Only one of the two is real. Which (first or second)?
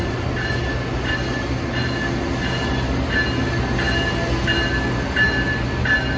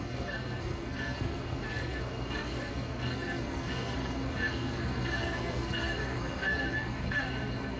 first